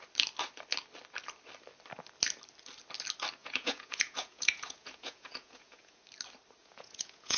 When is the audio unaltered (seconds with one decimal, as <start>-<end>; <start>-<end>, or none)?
0.0-3.4; 6.0-6.6